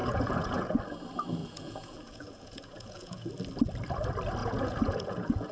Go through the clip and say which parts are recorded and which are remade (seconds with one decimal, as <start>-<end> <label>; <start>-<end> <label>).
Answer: 0.0-0.8 remade; 0.8-1.4 recorded; 1.4-3.3 remade; 3.3-4.4 recorded; 4.4-5.5 remade